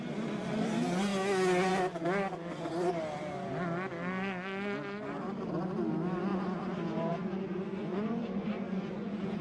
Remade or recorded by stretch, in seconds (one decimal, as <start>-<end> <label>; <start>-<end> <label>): 0.0-6.3 recorded; 6.3-9.4 remade